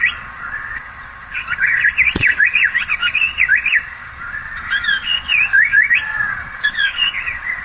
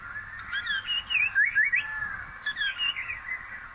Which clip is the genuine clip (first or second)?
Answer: second